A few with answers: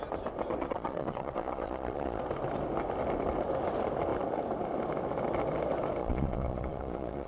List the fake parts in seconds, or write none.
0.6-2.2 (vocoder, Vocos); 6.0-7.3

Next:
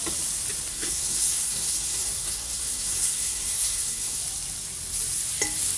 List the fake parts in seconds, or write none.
0.7-4.2 (codec, SNAC)

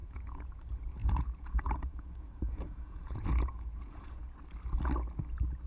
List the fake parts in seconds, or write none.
0.0-0.6 (vocoder, Vocos); 1.0-4.4

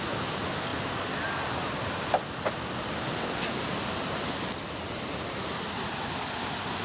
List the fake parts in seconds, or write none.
none

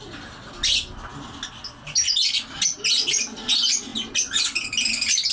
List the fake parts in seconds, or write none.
none

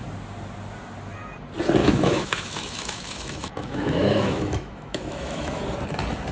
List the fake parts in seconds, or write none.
1.8-5.6 (autoencoder, DAC-VAE)

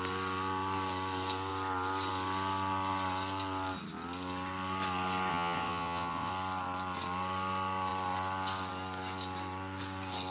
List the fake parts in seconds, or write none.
5.3-6.3 (vocoder, WaveNeXt)

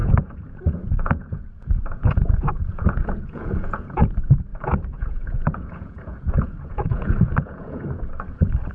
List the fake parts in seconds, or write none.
0.0-4.1 (vocoder, Vocos); 4.5-7.8